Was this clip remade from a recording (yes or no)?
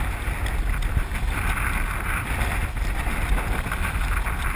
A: no